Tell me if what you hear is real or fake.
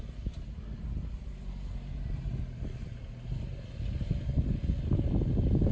real